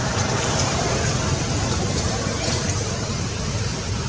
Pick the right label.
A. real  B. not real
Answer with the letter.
B